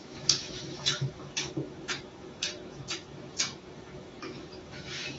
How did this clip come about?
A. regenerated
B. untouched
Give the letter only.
A